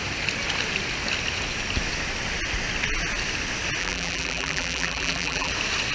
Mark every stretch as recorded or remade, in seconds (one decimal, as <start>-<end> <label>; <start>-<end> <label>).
0.0-3.8 recorded; 3.8-5.5 remade; 5.5-5.9 recorded

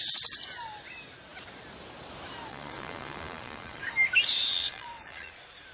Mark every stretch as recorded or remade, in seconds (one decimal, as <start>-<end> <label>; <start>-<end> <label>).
0.0-2.5 recorded; 2.5-3.8 remade; 3.8-4.5 recorded; 4.5-5.3 remade; 5.3-5.7 recorded